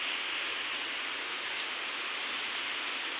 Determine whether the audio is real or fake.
real